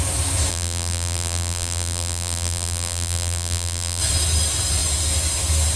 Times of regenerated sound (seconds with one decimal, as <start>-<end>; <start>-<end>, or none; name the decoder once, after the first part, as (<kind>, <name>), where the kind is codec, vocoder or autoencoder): 0.5-4.0 (vocoder, BigVGAN v2)